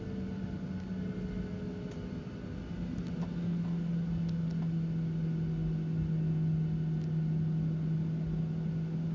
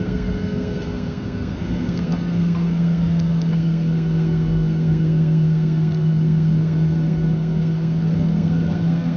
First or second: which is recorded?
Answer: first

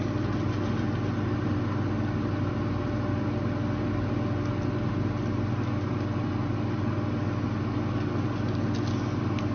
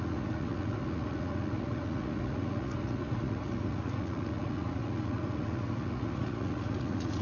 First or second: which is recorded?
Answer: first